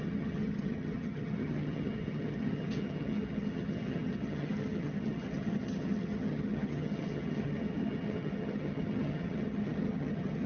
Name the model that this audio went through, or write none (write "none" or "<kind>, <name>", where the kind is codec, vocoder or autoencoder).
vocoder, HiFi-GAN